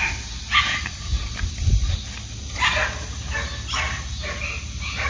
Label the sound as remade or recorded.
recorded